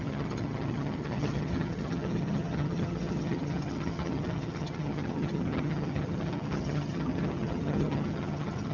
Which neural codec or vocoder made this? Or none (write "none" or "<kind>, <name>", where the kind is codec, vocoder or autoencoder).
vocoder, HiFi-GAN